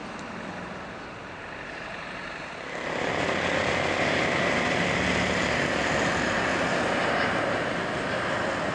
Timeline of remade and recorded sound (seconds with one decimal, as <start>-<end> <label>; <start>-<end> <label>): 0.0-3.1 remade; 3.1-8.7 recorded

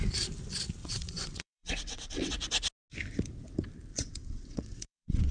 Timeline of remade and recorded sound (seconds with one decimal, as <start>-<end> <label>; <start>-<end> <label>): 0.0-0.8 recorded; 0.8-2.3 remade; 2.3-3.9 recorded; 3.9-5.3 remade

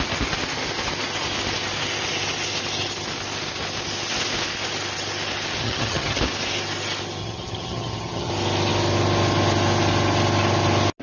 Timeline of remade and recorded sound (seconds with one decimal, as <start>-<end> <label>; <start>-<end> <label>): 0.0-5.6 recorded; 5.6-6.2 remade; 6.2-7.2 recorded; 7.2-8.3 remade; 8.3-11.0 recorded

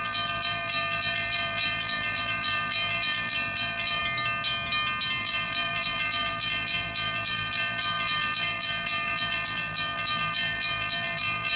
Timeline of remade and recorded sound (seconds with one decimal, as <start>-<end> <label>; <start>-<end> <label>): 0.0-4.0 remade; 4.0-5.2 recorded; 5.2-11.6 remade

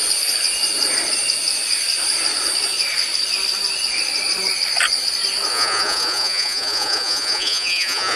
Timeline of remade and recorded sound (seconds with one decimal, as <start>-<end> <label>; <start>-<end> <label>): 0.0-5.5 recorded; 5.5-8.2 remade

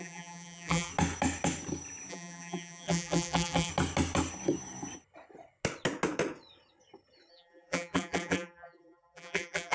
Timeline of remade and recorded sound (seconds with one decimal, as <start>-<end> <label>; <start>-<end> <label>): 0.0-0.9 remade; 0.9-2.1 recorded; 2.1-3.7 remade; 3.7-7.3 recorded; 7.3-9.7 remade